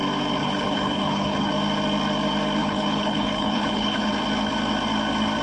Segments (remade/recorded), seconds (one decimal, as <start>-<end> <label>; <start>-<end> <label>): 0.0-0.4 recorded; 0.4-1.5 remade; 1.5-2.6 recorded; 2.6-4.1 remade; 4.1-5.4 recorded